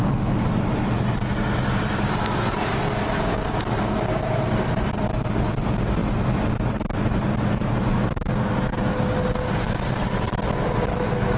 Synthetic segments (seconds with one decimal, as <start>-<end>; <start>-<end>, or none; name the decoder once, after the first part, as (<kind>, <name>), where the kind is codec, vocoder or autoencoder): none